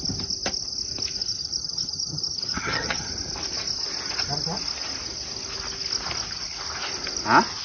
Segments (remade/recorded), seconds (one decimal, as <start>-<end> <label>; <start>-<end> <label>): 0.0-1.2 recorded; 1.2-3.1 remade; 3.1-7.6 recorded